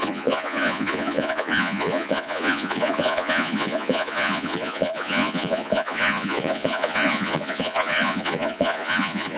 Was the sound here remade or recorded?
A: remade